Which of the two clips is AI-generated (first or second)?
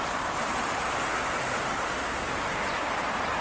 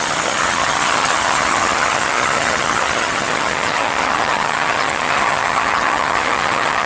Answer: second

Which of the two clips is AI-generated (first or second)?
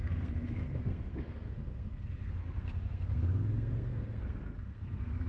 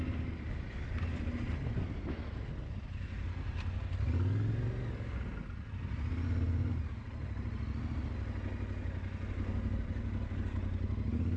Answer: first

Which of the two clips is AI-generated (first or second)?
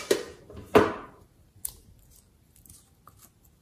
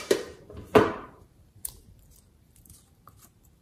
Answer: second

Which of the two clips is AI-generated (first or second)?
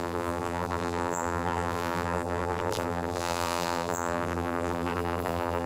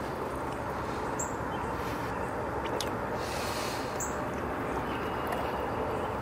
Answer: first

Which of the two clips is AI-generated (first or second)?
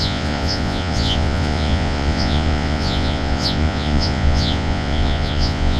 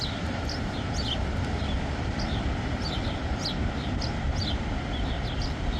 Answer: first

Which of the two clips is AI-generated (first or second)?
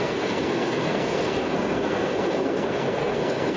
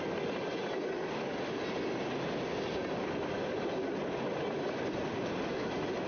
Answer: first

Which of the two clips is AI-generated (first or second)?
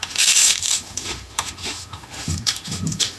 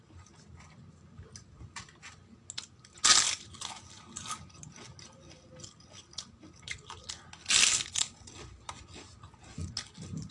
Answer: first